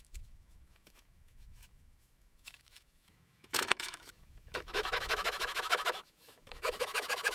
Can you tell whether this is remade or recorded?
remade